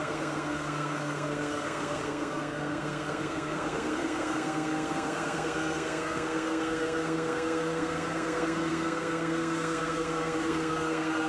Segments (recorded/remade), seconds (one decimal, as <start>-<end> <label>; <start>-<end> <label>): 0.0-11.3 remade